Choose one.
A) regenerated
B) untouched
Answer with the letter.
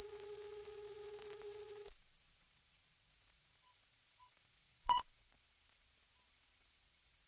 A